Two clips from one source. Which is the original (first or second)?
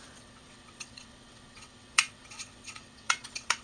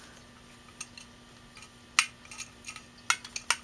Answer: second